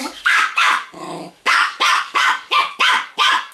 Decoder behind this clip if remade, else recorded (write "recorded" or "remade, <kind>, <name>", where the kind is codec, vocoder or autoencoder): remade, codec, DAC